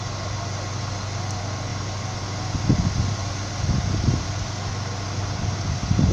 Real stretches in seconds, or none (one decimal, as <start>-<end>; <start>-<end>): 0.0-6.1